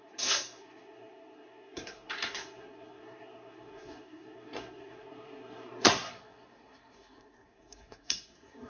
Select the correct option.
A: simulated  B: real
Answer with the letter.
A